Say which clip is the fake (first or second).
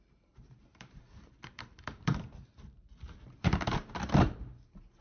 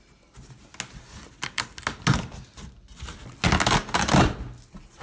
first